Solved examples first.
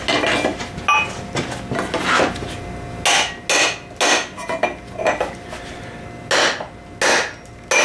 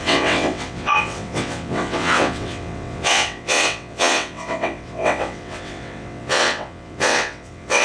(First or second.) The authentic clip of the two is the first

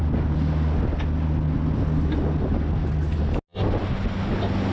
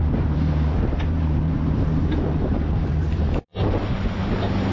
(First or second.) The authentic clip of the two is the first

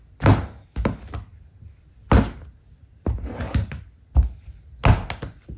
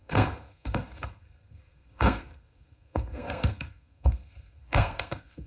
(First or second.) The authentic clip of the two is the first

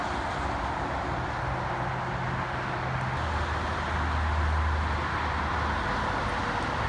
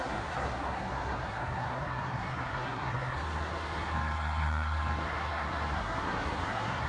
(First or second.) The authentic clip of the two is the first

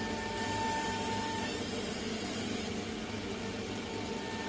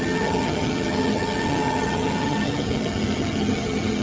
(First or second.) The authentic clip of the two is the first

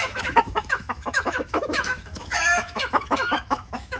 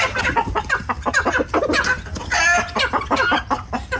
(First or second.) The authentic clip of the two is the second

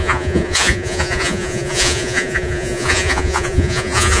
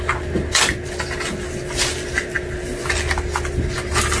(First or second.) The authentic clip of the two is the second